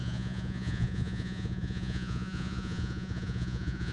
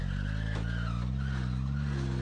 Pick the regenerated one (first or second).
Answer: first